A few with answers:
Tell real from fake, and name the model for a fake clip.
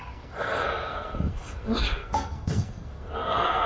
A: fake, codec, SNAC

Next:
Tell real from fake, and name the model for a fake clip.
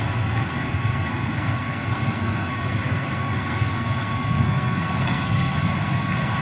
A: fake, codec, SNAC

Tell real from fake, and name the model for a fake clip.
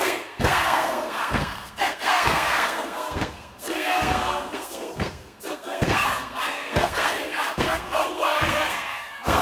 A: fake, codec, SNAC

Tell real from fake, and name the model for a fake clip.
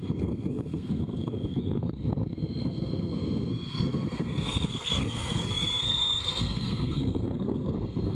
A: fake, codec, SNAC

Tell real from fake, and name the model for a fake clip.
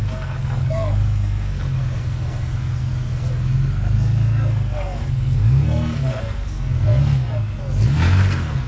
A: fake, codec, SNAC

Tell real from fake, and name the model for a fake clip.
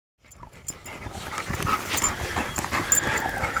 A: real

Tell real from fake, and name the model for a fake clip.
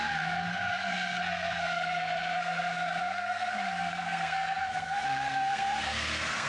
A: fake, codec, SNAC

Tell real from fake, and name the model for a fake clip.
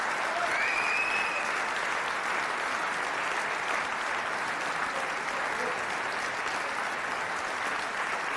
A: real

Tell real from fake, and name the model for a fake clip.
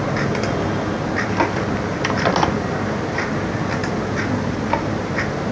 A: real